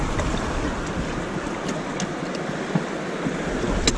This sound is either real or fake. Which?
real